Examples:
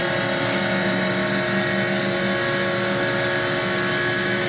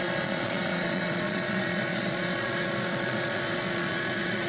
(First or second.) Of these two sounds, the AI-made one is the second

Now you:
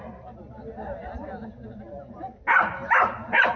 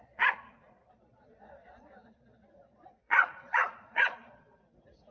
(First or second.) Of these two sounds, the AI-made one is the second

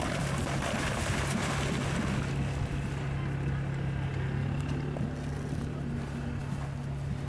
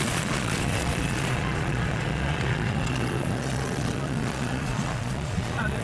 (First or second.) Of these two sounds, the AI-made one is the second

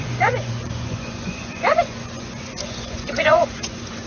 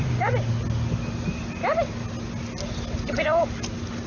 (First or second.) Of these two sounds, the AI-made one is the first